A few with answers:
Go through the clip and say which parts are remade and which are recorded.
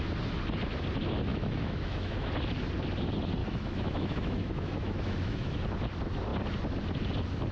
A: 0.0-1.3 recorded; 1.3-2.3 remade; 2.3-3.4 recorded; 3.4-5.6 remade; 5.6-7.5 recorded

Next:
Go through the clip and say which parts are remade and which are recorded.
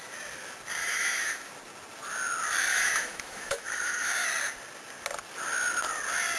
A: 0.0-0.8 recorded; 0.8-1.5 remade; 1.5-2.7 recorded; 2.7-4.1 remade; 4.1-6.4 recorded